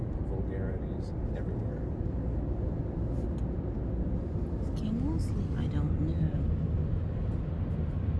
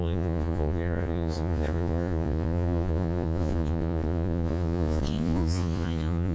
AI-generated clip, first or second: second